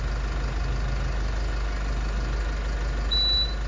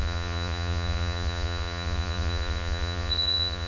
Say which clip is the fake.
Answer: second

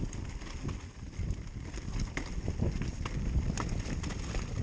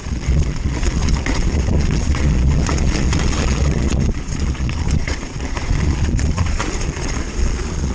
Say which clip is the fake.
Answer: second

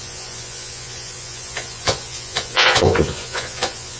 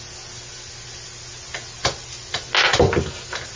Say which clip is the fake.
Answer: first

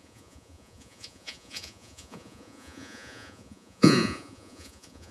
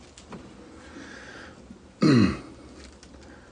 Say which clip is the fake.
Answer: first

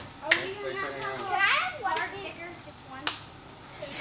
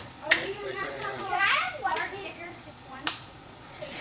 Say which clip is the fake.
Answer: second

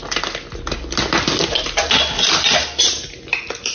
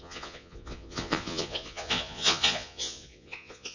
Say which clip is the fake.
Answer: second